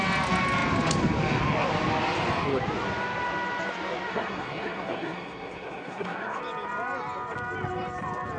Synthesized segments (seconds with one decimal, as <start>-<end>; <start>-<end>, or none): 4.1-6.4